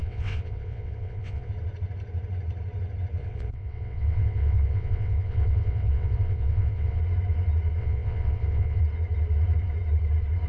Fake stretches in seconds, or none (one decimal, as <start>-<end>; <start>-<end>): 0.0-1.5; 3.2-7.0; 7.8-8.8